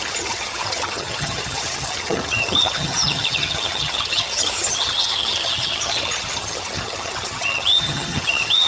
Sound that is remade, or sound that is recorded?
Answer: remade